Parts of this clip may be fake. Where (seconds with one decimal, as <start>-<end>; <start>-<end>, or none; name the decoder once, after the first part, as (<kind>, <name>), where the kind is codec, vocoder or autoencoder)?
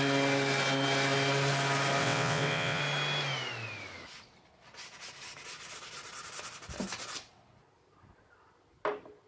2.0-2.8 (vocoder, WaveNeXt)